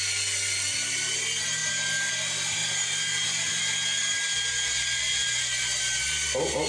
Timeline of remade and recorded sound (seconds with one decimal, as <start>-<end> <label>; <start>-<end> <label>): 0.0-2.6 recorded; 2.6-3.6 remade; 3.6-6.7 recorded